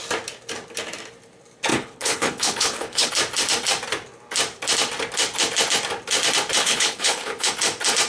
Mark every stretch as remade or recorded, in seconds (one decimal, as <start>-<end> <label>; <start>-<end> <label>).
0.0-1.7 recorded; 1.7-3.1 remade; 3.1-6.6 recorded; 6.6-7.5 remade; 7.5-8.1 recorded